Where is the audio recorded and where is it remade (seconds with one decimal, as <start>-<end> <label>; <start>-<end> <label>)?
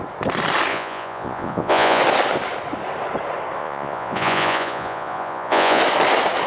0.0-0.7 recorded; 0.7-2.0 remade; 2.0-3.6 recorded; 3.6-5.8 remade; 5.8-6.5 recorded